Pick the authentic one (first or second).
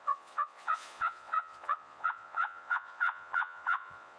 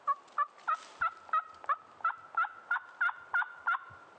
second